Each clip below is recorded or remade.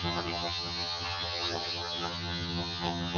remade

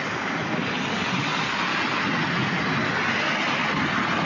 recorded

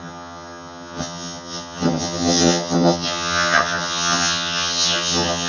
remade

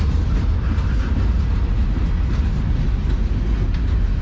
recorded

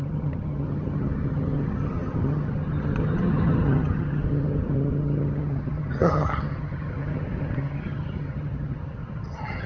remade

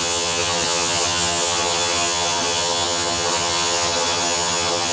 remade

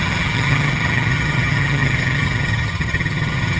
remade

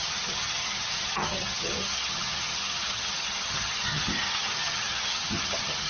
remade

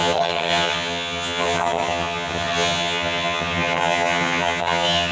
remade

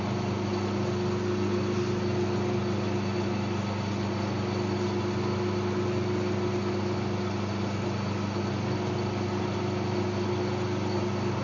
recorded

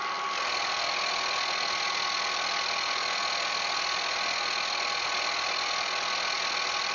recorded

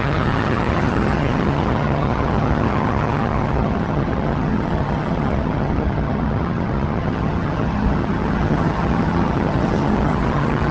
remade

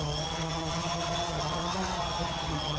remade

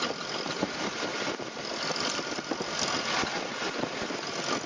recorded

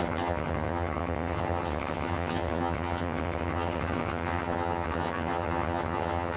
remade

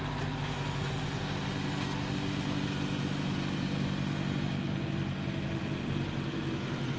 recorded